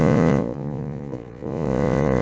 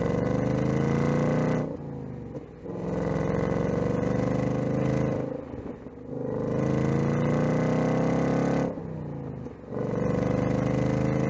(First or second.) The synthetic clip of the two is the first